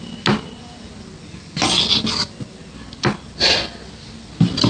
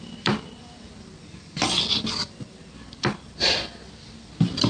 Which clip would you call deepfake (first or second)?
second